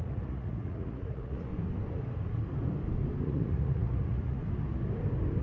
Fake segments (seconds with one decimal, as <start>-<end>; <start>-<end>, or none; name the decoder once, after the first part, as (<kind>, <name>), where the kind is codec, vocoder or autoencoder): 0.0-1.5 (vocoder, Vocos); 3.2-4.4